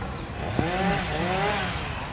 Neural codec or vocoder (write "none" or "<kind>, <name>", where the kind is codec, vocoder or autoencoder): none